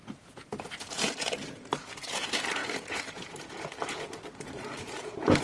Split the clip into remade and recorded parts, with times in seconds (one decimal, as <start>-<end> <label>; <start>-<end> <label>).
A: 0.0-5.4 remade